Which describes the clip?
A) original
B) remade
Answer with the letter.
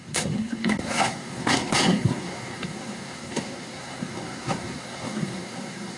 B